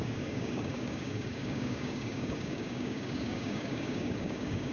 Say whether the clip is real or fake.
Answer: fake